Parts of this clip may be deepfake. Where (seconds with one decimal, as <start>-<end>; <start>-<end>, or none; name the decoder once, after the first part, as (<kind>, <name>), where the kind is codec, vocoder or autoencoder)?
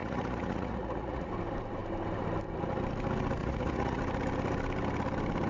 0.0-1.3 (vocoder, Vocos); 3.4-4.0